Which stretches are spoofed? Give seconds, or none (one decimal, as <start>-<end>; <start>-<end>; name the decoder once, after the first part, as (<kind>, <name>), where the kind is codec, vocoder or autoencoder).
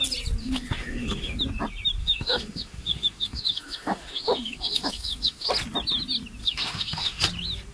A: 0.4-1.4 (autoencoder, DAC-VAE); 2.0-5.5; 6.4-7.2